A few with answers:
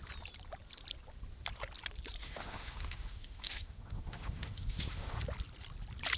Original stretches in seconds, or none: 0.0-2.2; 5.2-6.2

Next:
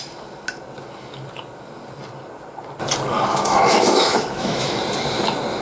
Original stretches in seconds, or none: 0.0-3.3; 4.8-5.6

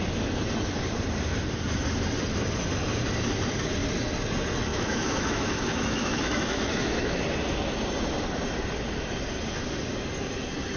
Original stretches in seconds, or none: 0.0-4.7; 7.2-10.8

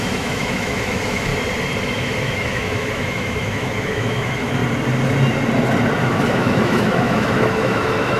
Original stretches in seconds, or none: 1.3-1.8; 4.6-6.0